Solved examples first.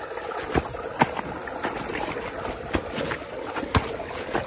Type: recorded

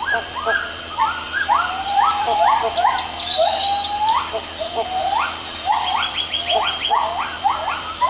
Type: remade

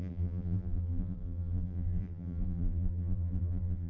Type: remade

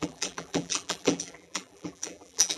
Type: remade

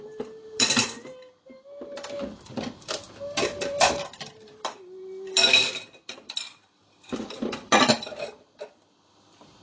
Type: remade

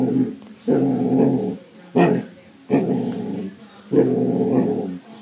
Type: recorded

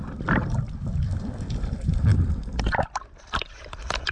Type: remade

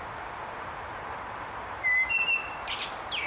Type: remade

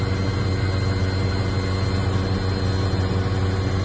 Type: recorded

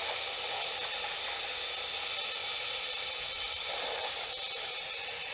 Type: recorded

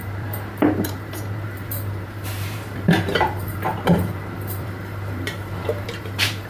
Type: remade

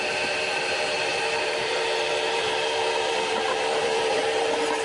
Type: remade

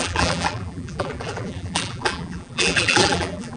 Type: remade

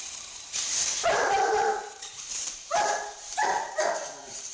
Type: remade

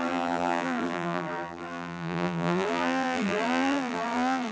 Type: remade